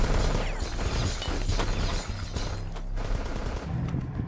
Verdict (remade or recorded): recorded